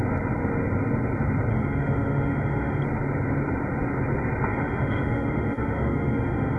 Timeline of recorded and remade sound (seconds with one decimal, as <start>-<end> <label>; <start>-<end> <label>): 0.0-1.5 recorded; 1.5-2.8 remade; 2.8-4.5 recorded; 4.5-6.6 remade